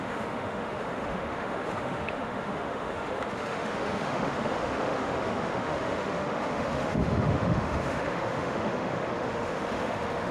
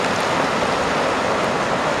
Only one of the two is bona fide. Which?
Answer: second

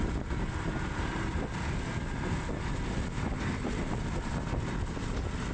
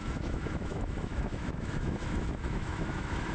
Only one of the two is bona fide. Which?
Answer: first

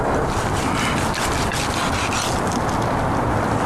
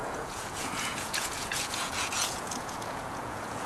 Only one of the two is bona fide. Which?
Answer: first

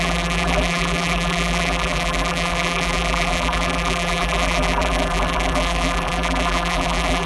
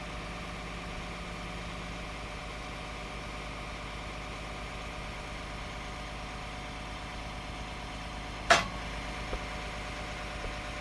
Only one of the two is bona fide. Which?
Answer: second